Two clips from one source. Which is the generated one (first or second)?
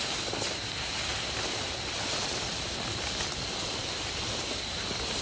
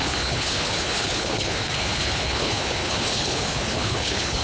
second